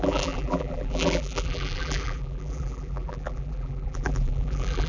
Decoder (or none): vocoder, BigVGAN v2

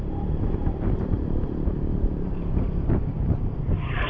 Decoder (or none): vocoder, BigVGAN v2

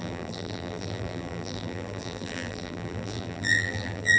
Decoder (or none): vocoder, BigVGAN v2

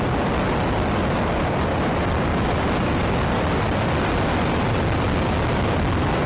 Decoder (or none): vocoder, BigVGAN v2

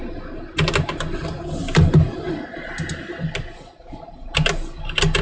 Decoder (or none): none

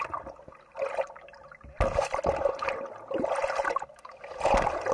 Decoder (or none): none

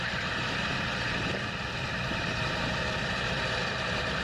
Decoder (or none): vocoder, BigVGAN v2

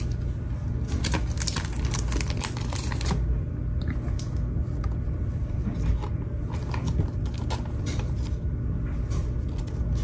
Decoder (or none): none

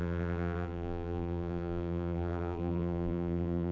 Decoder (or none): vocoder, BigVGAN v2